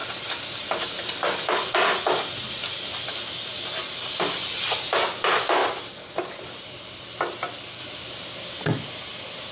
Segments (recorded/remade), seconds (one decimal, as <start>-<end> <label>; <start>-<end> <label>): 0.0-9.5 recorded